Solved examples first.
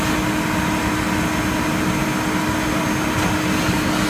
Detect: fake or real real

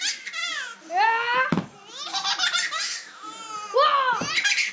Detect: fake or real real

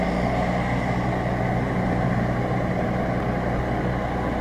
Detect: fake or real real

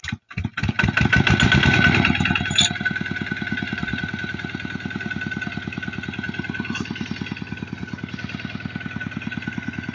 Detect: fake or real real